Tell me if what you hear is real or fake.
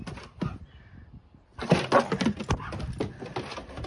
real